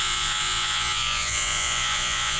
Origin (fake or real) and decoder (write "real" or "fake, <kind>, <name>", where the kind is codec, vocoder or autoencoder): fake, vocoder, Vocos